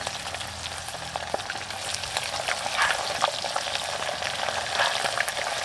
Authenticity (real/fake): real